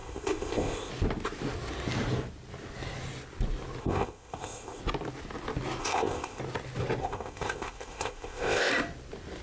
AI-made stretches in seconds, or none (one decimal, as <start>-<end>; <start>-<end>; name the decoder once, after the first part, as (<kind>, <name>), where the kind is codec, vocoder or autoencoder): 0.0-0.9 (codec, ZipCodec); 3.8-4.8; 5.8-6.4; 7.0-8.7